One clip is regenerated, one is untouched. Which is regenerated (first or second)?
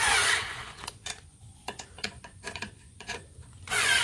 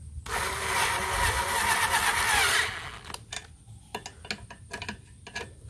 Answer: first